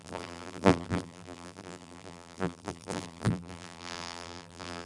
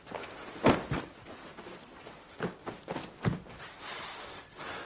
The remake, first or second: first